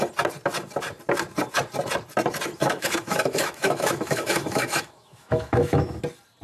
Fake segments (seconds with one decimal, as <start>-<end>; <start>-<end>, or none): 2.6-6.0